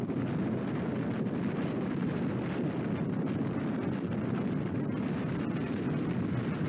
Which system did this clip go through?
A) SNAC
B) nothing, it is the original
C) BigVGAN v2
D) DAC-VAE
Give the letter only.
B